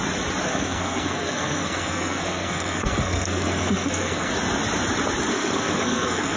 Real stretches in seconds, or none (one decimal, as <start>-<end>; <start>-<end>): 0.0-0.5; 4.3-5.3